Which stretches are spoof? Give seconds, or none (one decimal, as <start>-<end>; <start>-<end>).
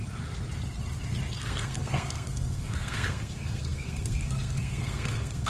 1.4-5.5